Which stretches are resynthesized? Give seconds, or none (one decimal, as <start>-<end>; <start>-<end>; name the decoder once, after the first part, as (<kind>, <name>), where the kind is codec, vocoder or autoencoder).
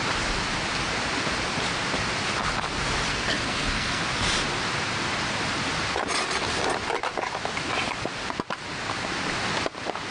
3.1-4.0 (codec, SNAC)